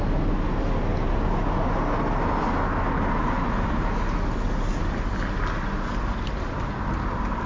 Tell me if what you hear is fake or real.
real